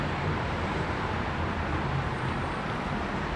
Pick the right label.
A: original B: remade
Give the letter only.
B